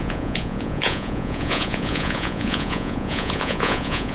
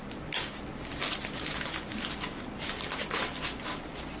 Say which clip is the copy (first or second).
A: first